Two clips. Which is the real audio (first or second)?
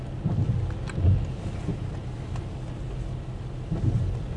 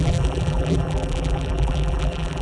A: first